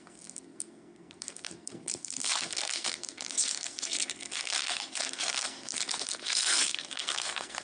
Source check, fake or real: fake